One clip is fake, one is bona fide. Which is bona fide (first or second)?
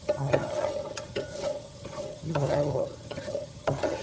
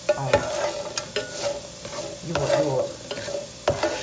second